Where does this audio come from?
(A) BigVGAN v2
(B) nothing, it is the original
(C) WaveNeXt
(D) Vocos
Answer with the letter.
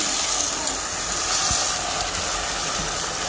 B